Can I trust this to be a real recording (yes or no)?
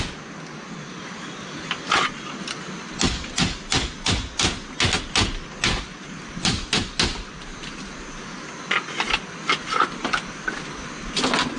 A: yes